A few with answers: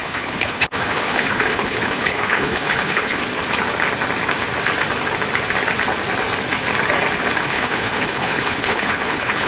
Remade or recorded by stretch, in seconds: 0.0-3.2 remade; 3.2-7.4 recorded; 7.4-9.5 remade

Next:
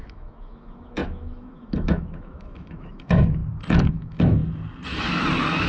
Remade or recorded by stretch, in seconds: 0.0-3.4 remade; 3.4-3.9 recorded; 3.9-4.4 remade; 4.4-5.7 recorded

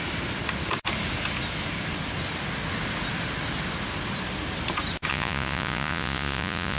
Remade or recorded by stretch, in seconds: 0.0-5.1 recorded; 5.1-6.8 remade

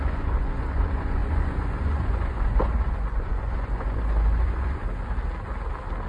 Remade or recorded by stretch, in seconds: 0.0-4.8 remade; 4.8-6.1 recorded

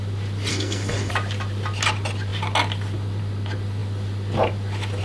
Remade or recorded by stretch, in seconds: 0.0-0.5 recorded; 0.5-1.1 remade; 1.1-5.0 recorded

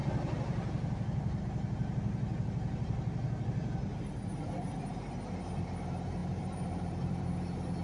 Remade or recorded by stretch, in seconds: 0.0-6.2 recorded; 6.2-7.2 remade; 7.2-7.8 recorded

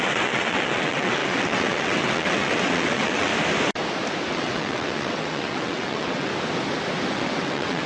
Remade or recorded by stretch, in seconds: 0.0-3.3 remade; 3.3-4.3 recorded; 4.3-6.3 remade; 6.3-7.1 recorded; 7.1-7.9 remade